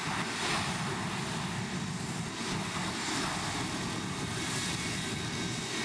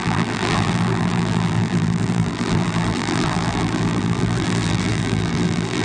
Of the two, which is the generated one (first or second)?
second